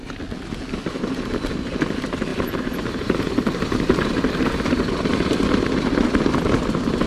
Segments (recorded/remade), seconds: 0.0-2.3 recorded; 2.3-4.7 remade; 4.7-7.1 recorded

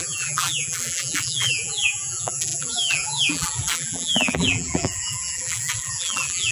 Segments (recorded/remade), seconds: 0.0-6.5 remade

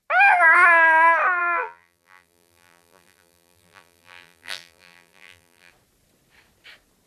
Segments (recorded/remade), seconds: 0.0-1.4 recorded; 1.4-5.7 remade; 5.7-7.1 recorded

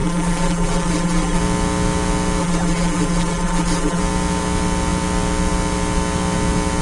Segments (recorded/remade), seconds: 0.0-1.4 remade; 1.4-2.4 recorded; 2.4-4.0 remade; 4.0-6.8 recorded

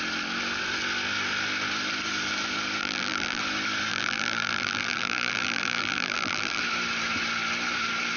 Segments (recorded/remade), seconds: 0.0-2.8 recorded; 2.8-3.4 remade; 3.4-3.9 recorded; 3.9-6.6 remade; 6.6-8.2 recorded

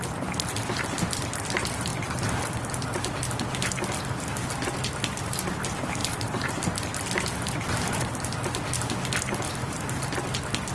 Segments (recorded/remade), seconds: 0.0-6.0 recorded; 6.0-6.8 remade; 6.8-9.6 recorded; 9.6-10.1 remade; 10.1-10.7 recorded

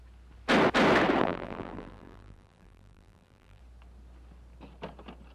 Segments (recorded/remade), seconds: 0.0-1.2 recorded; 1.2-3.6 remade; 3.6-5.3 recorded

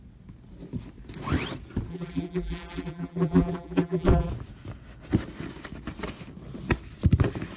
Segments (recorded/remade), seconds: 0.0-1.9 recorded; 1.9-4.3 remade; 4.3-7.6 recorded